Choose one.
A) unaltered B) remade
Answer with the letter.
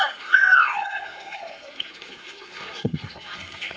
B